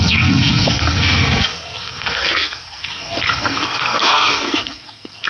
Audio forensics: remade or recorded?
remade